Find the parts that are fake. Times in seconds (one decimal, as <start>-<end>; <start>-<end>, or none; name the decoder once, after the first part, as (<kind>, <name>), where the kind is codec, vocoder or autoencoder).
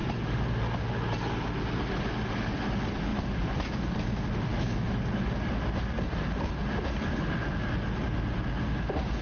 4.5-5.0 (autoencoder, DAC-VAE)